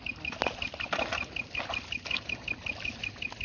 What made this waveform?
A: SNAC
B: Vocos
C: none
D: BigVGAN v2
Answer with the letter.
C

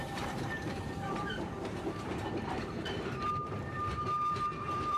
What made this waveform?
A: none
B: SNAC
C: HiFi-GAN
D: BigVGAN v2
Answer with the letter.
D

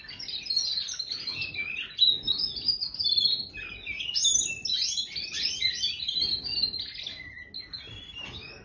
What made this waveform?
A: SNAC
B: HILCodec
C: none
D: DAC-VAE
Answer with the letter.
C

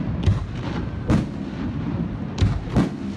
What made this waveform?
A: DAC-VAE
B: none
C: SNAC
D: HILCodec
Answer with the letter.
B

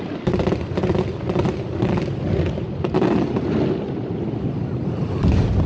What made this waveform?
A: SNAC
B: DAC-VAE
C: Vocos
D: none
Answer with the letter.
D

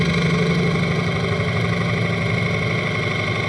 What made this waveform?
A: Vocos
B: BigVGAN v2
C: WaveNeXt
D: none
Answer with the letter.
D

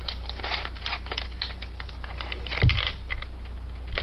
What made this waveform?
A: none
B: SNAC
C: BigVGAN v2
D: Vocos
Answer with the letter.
A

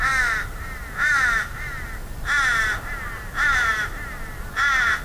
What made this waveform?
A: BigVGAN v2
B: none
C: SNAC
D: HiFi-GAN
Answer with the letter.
B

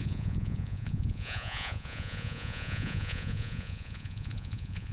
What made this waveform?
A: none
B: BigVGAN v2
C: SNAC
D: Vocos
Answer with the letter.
D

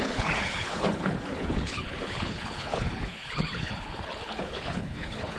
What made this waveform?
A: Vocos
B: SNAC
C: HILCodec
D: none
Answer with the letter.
C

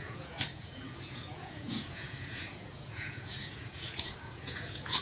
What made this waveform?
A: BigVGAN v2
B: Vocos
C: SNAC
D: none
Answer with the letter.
B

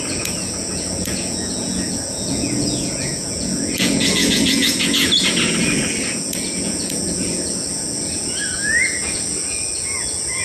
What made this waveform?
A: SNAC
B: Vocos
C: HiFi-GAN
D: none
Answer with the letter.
B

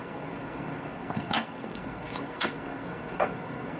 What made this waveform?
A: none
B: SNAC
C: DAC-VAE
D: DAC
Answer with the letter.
B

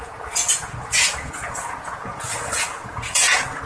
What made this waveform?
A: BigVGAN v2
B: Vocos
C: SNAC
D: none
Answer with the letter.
B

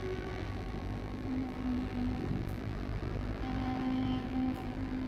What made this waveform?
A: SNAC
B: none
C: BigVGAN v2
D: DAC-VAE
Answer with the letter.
C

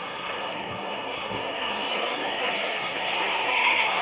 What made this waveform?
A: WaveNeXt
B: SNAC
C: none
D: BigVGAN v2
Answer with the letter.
B